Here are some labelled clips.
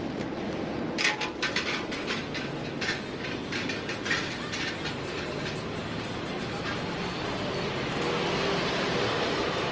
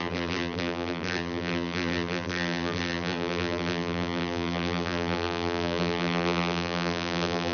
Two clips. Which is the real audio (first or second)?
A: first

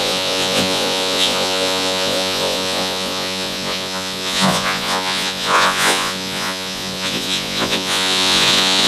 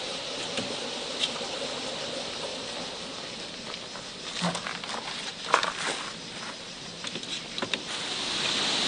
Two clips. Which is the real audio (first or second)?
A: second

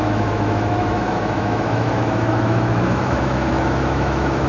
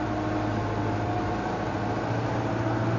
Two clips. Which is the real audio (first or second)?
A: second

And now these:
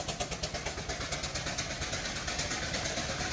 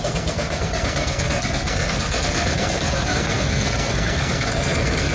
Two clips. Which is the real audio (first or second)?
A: first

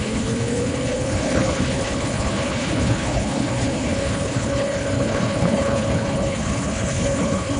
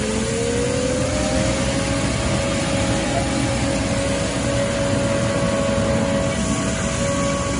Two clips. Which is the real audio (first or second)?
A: second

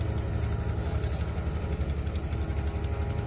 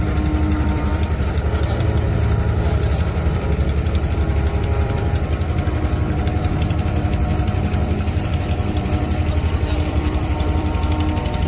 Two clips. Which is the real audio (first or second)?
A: first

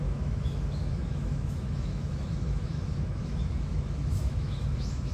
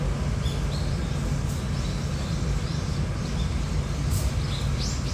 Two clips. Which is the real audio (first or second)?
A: second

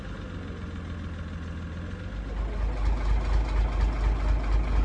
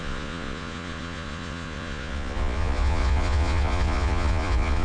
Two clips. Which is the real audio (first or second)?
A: first